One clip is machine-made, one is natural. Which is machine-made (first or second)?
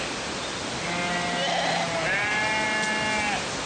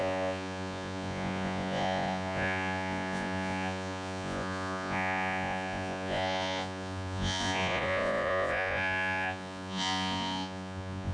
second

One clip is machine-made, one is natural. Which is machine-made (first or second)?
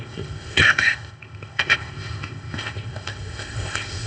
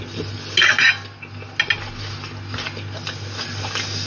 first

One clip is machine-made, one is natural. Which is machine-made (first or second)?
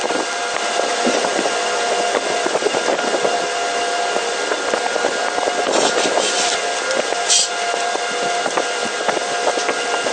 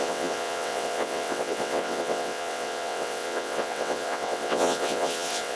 second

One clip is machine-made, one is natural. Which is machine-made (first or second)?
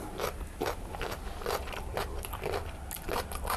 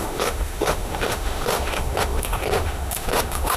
second